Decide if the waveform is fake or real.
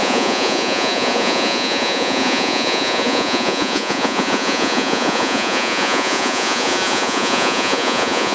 fake